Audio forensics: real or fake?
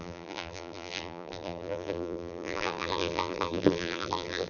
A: fake